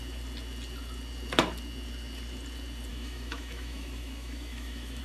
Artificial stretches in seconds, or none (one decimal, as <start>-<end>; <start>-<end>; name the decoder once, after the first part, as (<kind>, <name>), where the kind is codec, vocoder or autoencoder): 2.9-5.0 (autoencoder, DAC-VAE)